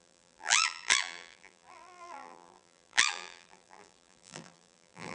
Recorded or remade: remade